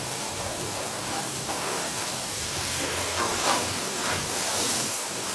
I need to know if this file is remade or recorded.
remade